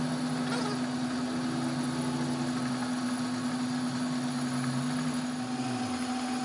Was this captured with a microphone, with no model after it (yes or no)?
yes